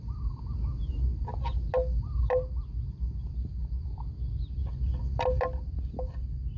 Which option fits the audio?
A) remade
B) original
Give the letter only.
B